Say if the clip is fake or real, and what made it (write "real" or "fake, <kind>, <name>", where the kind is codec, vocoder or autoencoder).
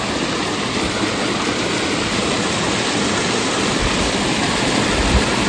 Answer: real